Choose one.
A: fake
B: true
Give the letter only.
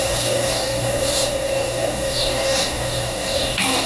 A